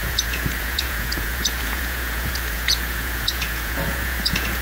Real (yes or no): no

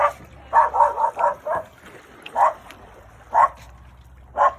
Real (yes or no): yes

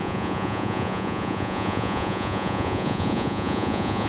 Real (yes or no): no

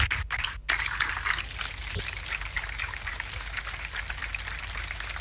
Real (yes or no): yes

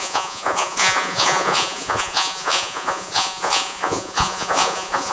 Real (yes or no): no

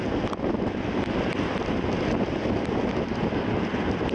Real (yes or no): yes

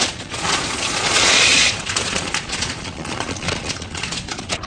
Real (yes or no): no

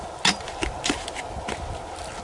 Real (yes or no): yes